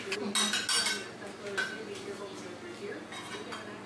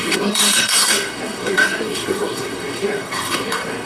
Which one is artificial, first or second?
second